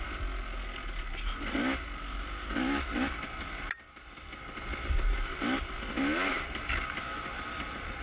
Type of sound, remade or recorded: recorded